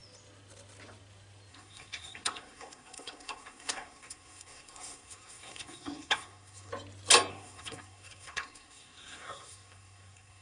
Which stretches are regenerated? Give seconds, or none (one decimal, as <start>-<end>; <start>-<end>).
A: 1.5-6.7; 7.3-10.4